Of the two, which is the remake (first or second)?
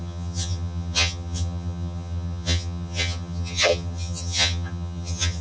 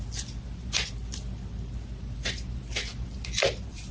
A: first